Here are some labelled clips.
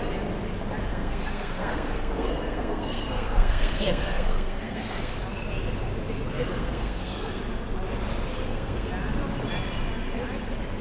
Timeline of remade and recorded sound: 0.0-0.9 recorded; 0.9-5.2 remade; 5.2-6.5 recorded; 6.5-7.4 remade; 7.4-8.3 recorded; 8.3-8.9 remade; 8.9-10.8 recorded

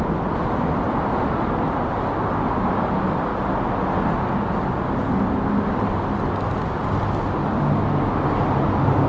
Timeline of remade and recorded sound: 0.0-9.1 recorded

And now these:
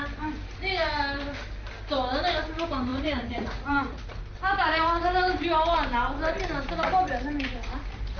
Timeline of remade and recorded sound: 0.0-2.9 recorded; 2.9-4.2 remade; 4.2-8.2 recorded

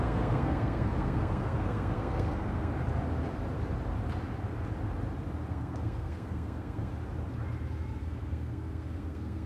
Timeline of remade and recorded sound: 0.0-2.7 remade; 2.7-5.5 recorded; 5.5-6.9 remade; 6.9-8.0 recorded; 8.0-9.5 remade